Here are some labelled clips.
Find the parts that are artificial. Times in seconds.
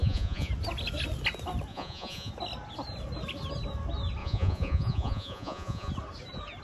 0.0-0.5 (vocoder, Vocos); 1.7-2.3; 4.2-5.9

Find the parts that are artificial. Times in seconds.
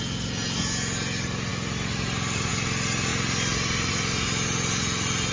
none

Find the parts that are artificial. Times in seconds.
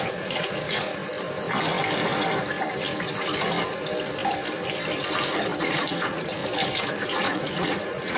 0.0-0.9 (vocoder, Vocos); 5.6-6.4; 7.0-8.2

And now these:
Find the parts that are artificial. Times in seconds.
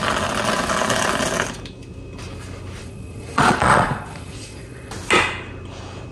2.8-4.9 (vocoder, Vocos)